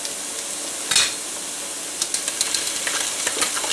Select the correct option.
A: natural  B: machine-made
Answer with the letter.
A